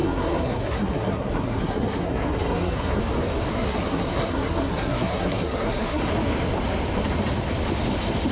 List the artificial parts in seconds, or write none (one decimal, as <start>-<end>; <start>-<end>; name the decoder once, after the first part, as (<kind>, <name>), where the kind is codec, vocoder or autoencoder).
0.0-3.0 (codec, SNAC); 3.5-6.0